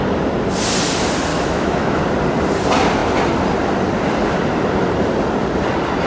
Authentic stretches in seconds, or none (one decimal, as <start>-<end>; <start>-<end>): 0.0-1.3; 2.0-6.1